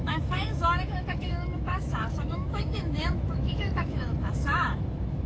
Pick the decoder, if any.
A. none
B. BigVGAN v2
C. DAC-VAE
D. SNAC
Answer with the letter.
C